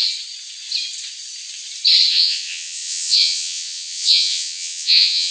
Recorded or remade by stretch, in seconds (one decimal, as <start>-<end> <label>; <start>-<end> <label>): 0.0-2.1 recorded; 2.1-5.3 remade